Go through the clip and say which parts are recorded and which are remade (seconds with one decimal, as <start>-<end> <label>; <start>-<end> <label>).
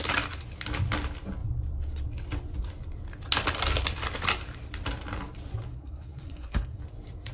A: 0.0-5.7 recorded; 5.7-6.8 remade; 6.8-7.3 recorded